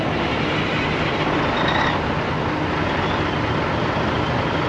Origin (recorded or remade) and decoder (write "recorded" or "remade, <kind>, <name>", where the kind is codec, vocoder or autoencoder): recorded